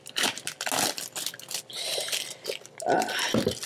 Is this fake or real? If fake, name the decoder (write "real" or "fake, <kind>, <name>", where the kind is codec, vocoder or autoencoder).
real